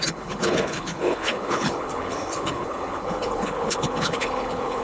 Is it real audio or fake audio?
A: fake